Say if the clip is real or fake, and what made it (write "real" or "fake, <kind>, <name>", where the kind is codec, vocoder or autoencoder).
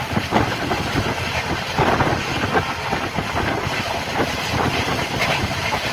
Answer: real